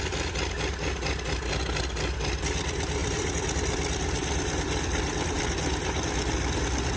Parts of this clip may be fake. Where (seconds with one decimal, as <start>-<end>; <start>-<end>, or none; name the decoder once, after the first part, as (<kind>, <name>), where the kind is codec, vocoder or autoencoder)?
3.0-3.5 (vocoder, BigVGAN v2); 4.2-5.7